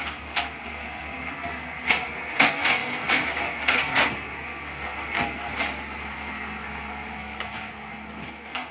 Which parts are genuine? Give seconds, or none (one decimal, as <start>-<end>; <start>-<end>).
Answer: 5.5-6.0